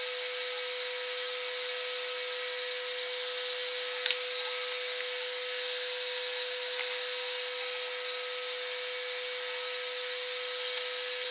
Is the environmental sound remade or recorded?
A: recorded